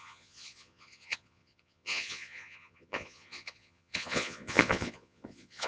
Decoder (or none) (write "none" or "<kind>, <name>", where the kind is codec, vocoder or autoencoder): vocoder, Vocos